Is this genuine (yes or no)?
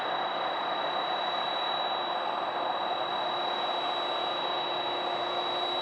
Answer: yes